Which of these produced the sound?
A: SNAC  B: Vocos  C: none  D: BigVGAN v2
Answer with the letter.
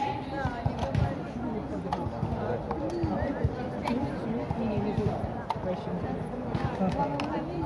C